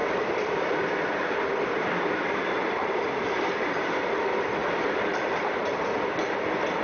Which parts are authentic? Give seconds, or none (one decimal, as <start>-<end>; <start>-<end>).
1.3-2.6; 3.8-4.6; 6.1-6.8